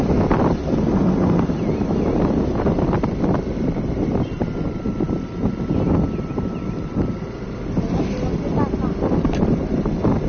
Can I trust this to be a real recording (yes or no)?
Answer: yes